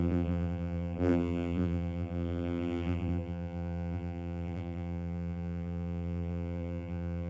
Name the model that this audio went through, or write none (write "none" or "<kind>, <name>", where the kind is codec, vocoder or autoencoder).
vocoder, BigVGAN v2